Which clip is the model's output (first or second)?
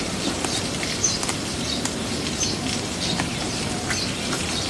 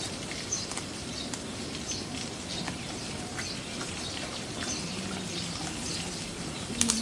second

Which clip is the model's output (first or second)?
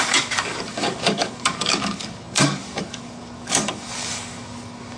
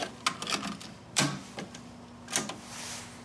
first